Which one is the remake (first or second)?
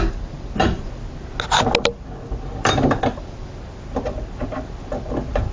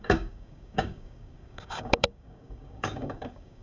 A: second